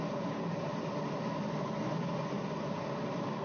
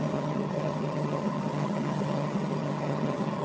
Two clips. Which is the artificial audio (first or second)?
second